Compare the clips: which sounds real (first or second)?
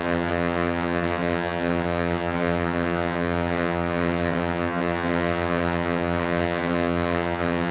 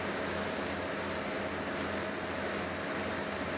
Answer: second